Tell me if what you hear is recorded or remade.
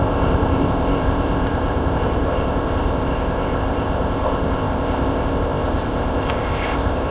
remade